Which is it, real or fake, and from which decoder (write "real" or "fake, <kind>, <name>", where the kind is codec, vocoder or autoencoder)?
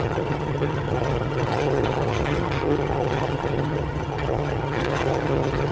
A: fake, vocoder, HiFi-GAN